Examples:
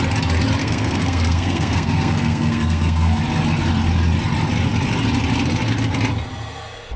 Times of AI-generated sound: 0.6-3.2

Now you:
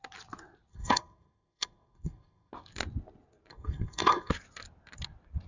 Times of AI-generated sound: 0.7-2.5; 3.5-4.3

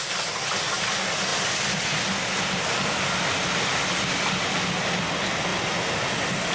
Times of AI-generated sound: none

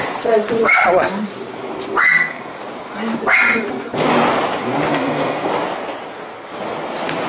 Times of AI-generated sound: 2.0-2.6; 4.9-5.5

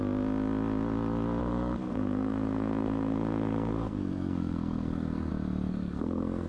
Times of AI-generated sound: 1.4-5.3; 5.7-6.5